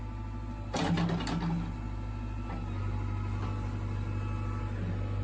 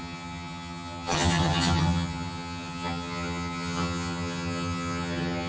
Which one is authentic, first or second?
first